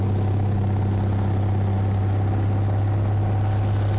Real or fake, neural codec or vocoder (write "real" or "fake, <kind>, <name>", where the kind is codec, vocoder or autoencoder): real